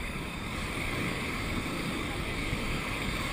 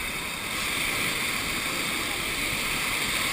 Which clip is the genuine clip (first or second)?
second